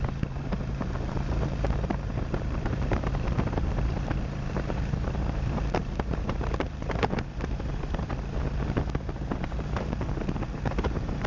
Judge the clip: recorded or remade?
remade